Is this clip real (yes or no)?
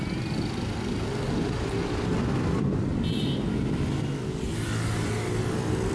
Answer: yes